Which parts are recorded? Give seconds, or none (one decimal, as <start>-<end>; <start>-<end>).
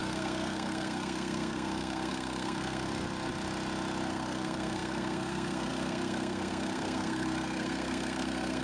2.9-4.1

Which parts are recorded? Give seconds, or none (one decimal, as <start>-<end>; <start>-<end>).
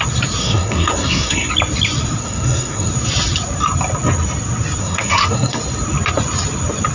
0.0-0.4; 1.5-2.2; 2.9-4.8; 5.6-6.9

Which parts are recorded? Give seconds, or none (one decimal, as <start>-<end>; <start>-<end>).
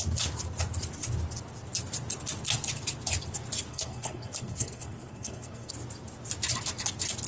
0.0-3.7; 5.7-7.3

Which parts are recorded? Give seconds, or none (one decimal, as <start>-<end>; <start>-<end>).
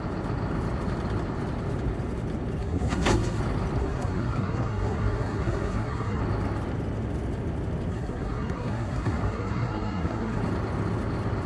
0.0-2.6; 3.4-3.8; 6.2-7.9; 10.4-11.5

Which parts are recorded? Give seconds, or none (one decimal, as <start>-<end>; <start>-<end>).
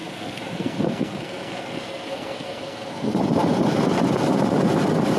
3.1-5.2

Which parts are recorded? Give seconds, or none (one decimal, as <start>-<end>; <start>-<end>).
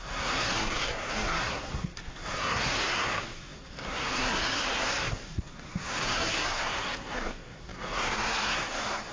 none